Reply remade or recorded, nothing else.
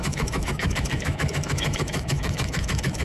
remade